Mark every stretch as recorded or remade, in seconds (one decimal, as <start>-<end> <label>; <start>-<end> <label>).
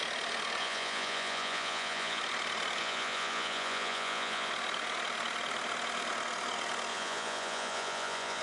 0.0-0.6 recorded; 0.6-2.2 remade; 2.2-2.8 recorded; 2.8-4.5 remade; 4.5-6.9 recorded; 6.9-8.4 remade